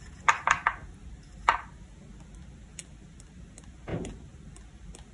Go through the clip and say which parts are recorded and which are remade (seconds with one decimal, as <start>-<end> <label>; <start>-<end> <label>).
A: 0.0-5.1 recorded